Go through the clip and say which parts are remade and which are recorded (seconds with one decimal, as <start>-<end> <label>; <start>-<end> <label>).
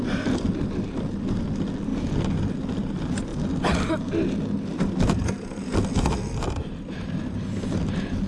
0.0-8.3 recorded